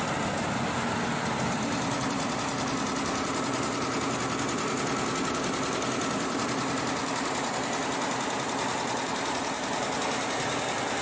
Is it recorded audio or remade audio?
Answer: recorded